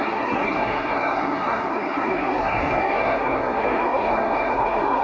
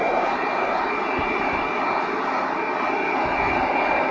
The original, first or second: second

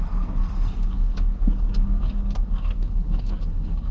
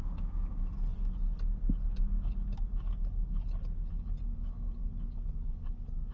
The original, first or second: second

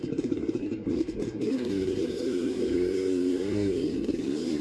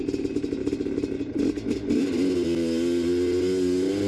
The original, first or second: second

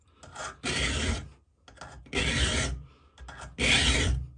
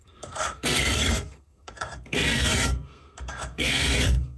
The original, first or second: first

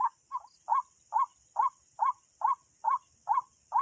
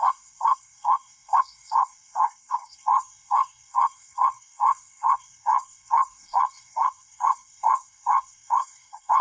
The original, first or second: first